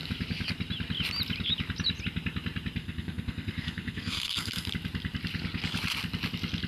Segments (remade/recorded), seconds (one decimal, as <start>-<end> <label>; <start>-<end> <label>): 0.0-2.8 recorded; 2.8-4.7 remade; 4.7-6.7 recorded